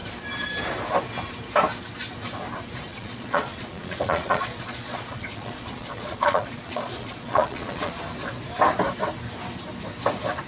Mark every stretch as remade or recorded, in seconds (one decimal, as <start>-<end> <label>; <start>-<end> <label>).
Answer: 0.0-2.9 recorded; 2.9-7.9 remade; 7.9-10.5 recorded